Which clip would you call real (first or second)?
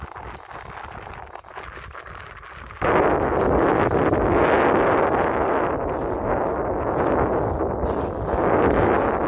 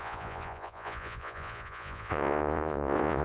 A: first